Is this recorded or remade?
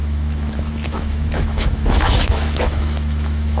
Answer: remade